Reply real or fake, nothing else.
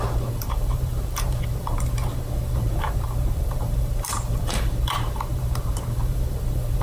fake